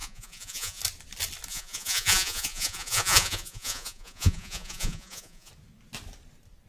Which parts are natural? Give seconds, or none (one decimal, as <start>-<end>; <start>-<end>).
0.8-1.5; 5.5-6.7